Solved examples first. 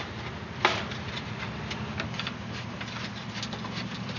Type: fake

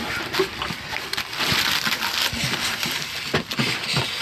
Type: real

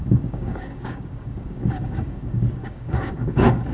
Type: fake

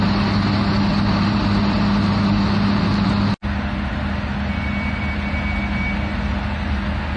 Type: real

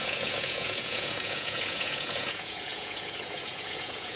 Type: fake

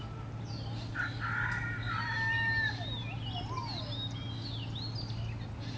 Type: real